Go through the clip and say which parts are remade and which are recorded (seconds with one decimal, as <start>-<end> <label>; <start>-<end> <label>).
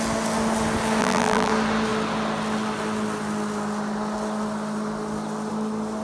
0.0-1.0 recorded; 1.0-1.5 remade; 1.5-6.0 recorded